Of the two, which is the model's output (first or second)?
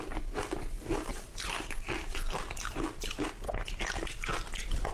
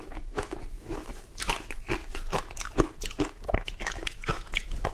second